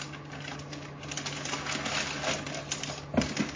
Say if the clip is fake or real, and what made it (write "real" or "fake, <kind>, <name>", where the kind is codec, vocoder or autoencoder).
real